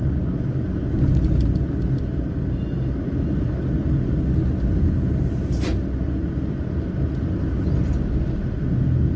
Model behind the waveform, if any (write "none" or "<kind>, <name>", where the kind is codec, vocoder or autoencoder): none